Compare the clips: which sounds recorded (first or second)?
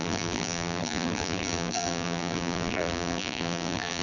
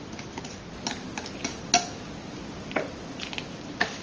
second